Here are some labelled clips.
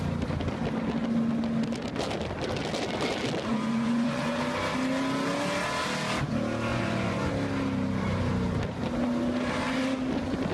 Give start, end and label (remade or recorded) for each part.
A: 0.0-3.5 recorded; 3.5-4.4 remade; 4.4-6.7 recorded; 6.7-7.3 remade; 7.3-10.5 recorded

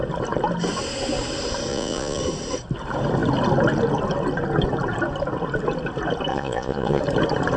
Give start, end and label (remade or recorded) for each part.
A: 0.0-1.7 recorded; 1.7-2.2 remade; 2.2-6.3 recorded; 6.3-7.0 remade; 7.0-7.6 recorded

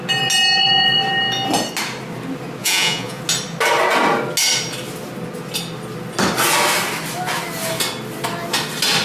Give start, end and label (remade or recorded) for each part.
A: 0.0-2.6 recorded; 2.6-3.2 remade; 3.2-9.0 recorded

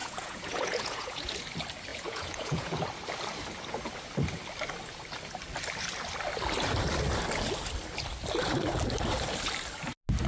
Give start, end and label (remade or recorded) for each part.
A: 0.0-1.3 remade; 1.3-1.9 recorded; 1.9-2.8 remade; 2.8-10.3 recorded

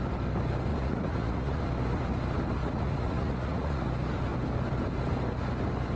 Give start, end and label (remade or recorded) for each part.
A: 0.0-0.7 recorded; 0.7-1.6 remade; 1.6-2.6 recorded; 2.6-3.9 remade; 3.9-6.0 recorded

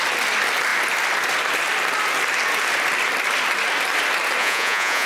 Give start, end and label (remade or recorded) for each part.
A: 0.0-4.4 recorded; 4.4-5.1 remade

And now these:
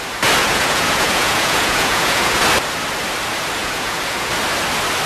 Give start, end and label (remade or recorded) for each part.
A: 0.0-0.4 recorded; 0.4-2.4 remade; 2.4-3.6 recorded; 3.6-4.3 remade; 4.3-5.1 recorded

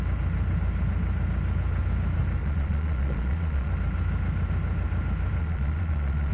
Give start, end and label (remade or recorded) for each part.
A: 0.0-2.4 recorded; 2.4-3.7 remade; 3.7-5.4 recorded; 5.4-6.3 remade